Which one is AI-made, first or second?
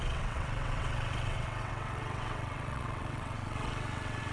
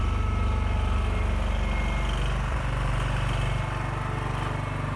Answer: first